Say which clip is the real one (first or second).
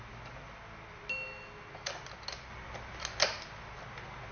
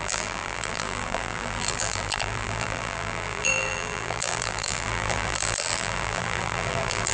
first